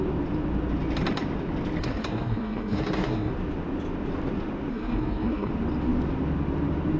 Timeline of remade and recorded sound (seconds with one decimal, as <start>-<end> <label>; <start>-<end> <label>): 0.0-1.8 recorded; 1.8-3.3 remade; 3.3-4.7 recorded; 4.7-5.5 remade; 5.5-7.0 recorded